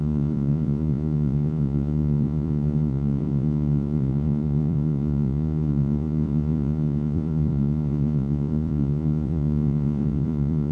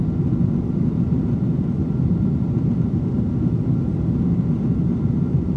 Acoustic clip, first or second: second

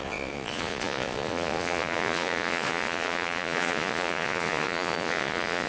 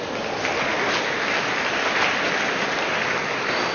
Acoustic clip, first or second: second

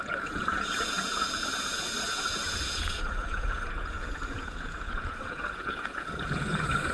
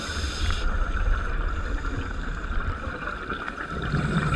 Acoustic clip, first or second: second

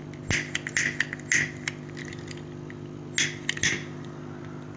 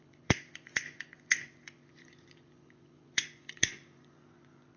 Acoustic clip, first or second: first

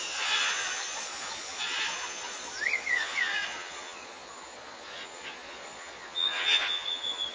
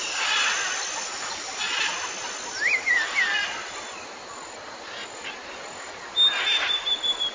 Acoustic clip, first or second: second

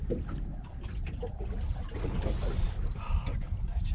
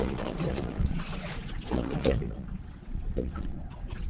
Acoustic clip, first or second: first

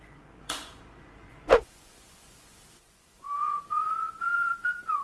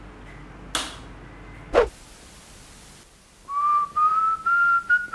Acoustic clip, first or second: second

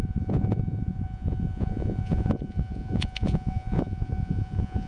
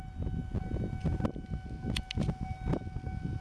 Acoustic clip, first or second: second